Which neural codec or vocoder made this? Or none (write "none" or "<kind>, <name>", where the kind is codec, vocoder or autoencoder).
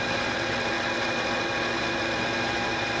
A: none